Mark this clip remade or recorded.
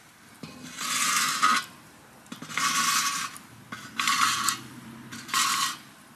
recorded